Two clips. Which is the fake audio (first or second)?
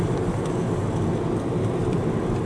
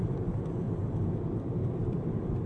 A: second